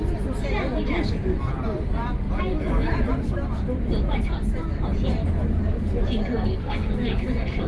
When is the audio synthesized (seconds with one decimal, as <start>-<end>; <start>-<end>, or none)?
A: 6.3-7.7